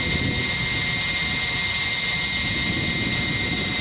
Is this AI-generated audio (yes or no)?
no